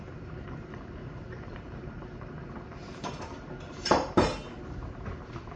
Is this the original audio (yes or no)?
no